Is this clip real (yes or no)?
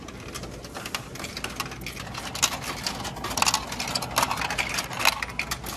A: yes